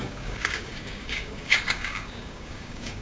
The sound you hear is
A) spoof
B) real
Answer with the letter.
A